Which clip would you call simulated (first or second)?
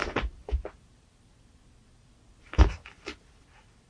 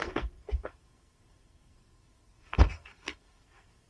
second